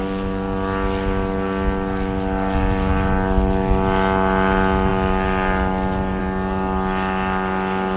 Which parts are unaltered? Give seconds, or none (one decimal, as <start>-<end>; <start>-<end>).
0.0-8.0